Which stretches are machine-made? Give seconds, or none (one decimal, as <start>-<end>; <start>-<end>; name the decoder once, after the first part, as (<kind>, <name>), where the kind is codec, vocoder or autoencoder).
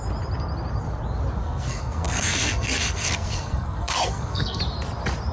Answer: 1.4-4.6 (codec, SNAC)